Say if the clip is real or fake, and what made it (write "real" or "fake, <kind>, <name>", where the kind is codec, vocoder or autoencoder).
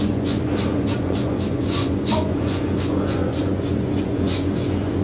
fake, vocoder, Vocos